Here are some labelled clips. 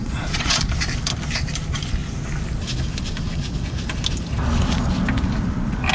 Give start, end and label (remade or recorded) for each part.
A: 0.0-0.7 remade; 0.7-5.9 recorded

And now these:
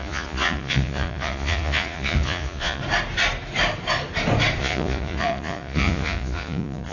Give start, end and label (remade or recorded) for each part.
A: 0.0-2.8 remade; 2.8-4.6 recorded; 4.6-6.9 remade